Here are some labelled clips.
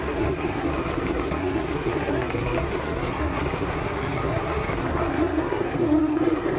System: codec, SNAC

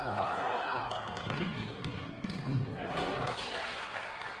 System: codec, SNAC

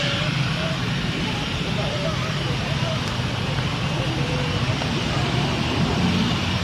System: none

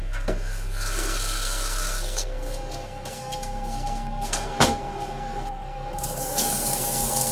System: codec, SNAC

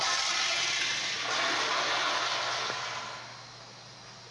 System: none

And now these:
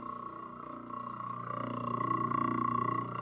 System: none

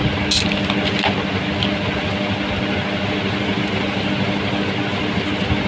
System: none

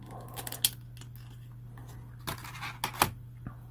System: none